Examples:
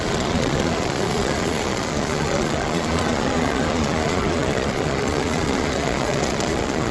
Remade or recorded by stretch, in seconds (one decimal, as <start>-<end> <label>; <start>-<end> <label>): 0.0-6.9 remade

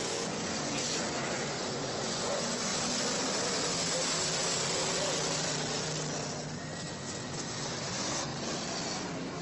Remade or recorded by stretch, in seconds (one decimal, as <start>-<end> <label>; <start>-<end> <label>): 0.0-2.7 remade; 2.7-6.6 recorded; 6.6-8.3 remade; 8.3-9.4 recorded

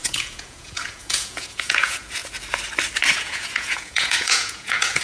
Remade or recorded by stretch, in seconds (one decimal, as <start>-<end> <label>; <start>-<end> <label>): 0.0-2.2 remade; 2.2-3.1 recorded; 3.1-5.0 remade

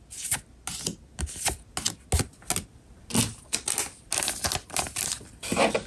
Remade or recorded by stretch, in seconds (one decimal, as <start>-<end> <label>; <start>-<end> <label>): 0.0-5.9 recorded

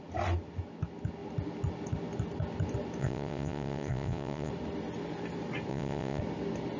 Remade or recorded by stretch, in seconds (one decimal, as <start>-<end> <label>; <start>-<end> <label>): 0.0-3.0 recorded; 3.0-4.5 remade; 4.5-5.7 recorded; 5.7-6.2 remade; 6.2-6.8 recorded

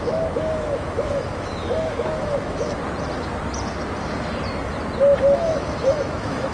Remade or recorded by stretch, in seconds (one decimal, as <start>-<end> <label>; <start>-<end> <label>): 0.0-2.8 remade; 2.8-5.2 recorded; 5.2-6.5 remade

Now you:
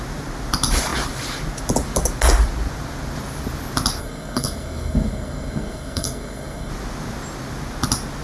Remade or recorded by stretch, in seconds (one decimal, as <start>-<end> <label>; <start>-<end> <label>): 0.0-4.0 recorded; 4.0-6.7 remade; 6.7-8.2 recorded

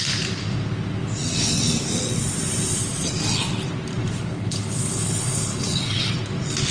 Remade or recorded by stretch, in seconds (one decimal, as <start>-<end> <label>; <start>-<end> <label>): 0.0-4.0 recorded; 4.0-6.1 remade; 6.1-6.7 recorded